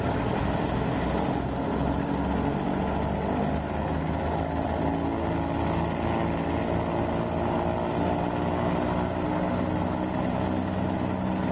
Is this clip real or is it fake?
real